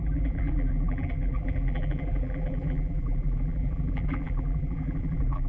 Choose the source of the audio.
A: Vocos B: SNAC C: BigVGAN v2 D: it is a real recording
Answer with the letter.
C